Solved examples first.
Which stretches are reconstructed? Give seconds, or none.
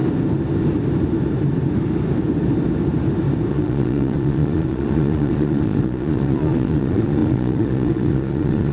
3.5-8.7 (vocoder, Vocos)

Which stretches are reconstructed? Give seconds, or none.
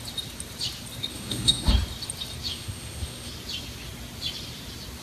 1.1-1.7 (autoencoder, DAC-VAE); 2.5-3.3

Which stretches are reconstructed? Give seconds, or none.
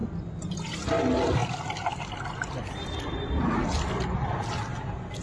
none